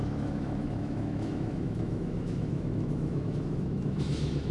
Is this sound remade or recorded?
remade